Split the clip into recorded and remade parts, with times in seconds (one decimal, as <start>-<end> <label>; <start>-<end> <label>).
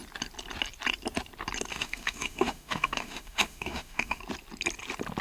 0.0-1.7 recorded; 1.7-4.2 remade; 4.2-5.2 recorded